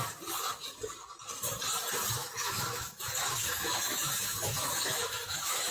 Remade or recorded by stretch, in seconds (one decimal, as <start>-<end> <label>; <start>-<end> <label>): 0.0-2.2 recorded; 2.2-5.7 remade